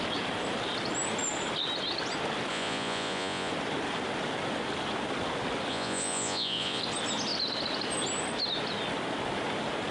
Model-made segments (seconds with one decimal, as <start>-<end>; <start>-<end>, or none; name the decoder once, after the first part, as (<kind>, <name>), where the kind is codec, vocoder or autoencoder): 2.5-3.5 (vocoder, Vocos); 5.7-6.8